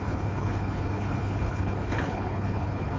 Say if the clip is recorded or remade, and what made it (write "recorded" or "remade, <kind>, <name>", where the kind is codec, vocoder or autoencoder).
remade, codec, HILCodec